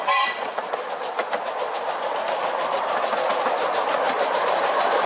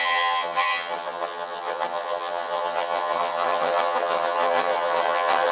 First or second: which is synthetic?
second